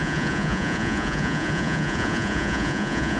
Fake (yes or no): yes